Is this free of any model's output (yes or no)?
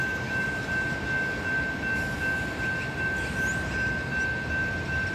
yes